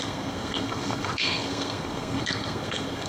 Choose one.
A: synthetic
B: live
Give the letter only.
A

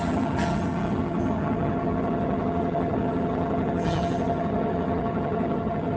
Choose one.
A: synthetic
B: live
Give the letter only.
A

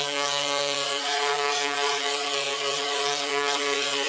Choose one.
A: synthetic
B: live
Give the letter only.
A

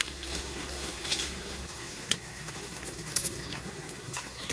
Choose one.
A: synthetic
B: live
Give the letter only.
A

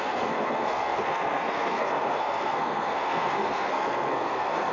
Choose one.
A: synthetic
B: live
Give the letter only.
A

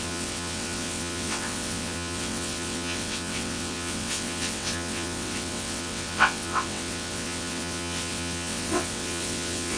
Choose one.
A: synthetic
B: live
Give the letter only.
A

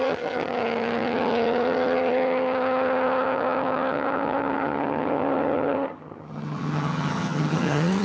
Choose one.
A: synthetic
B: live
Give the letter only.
A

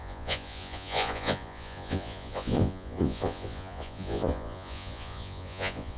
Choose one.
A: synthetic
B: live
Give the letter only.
A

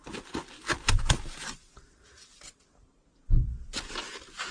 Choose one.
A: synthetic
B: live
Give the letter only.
B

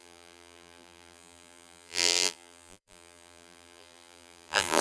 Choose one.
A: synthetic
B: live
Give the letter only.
A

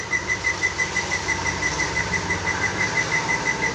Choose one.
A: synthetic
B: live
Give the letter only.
B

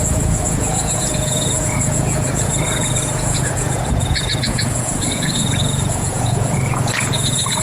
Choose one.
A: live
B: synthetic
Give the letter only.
B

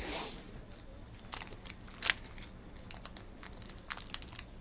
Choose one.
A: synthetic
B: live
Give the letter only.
B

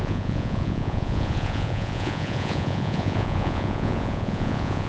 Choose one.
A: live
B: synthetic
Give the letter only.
B